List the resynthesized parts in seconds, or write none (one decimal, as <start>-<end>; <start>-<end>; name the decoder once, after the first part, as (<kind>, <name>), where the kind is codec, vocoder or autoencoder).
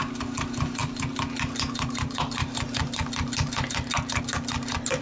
none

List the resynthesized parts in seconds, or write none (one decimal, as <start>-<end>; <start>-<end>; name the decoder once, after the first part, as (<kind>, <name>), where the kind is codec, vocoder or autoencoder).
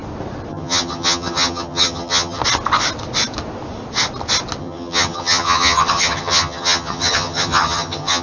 0.5-2.4 (vocoder, HiFi-GAN); 4.6-8.2